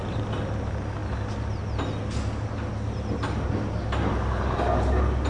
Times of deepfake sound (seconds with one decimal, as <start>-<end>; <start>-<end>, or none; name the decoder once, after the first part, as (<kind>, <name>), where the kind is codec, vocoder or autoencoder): none